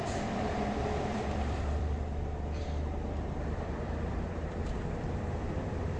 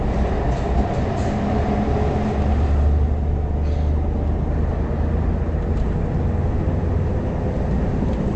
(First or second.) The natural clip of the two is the second